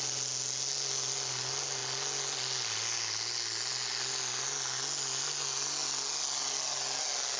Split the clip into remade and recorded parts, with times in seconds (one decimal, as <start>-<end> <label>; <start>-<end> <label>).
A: 0.0-7.4 recorded